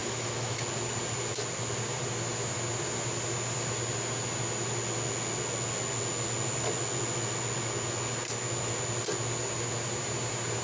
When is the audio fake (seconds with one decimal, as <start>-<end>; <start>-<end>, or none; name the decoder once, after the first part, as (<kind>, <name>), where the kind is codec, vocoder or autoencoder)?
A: 0.0-0.6 (autoencoder, DAC-VAE)